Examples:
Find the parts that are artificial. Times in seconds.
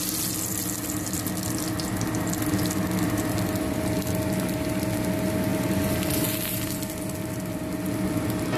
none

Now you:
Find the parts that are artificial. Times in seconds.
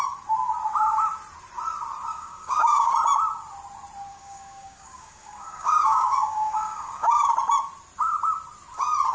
2.1-2.9 (codec, DAC); 4.1-7.3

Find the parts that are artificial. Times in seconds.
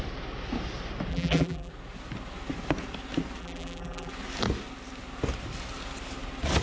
1.1-1.7 (vocoder, BigVGAN v2); 3.4-4.1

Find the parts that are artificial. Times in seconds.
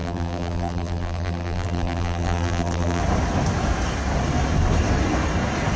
0.0-3.0 (vocoder, BigVGAN v2)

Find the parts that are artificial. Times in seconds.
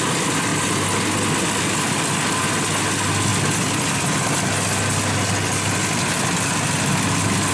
none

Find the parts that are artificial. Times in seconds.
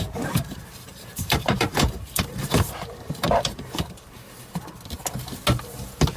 0.9-4.6 (vocoder, BigVGAN v2)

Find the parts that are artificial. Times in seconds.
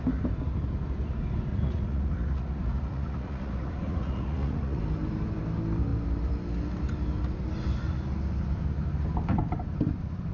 1.5-4.8 (vocoder, Vocos)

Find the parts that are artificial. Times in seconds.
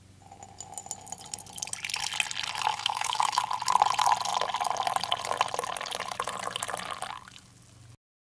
2.7-3.4 (autoencoder, DAC-VAE)